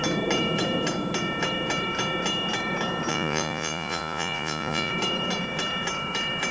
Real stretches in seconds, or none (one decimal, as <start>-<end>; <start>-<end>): 0.0-3.1; 4.9-6.5